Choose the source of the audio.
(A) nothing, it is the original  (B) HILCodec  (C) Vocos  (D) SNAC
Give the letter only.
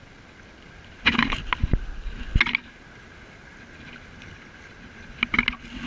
A